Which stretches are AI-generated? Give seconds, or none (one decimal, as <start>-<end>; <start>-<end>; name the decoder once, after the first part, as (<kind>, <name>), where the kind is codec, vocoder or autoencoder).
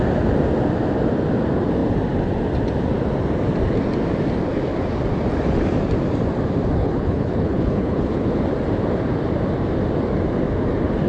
6.8-8.4 (codec, HILCodec)